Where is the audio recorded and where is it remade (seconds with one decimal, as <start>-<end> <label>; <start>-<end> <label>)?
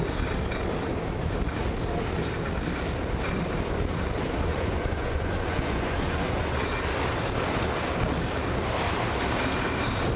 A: 0.0-4.5 recorded; 4.5-6.8 remade; 6.8-10.2 recorded